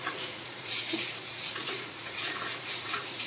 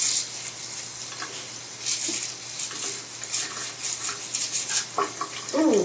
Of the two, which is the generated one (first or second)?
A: first